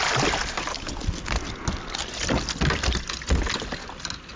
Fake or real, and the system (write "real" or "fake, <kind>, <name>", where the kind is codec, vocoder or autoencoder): real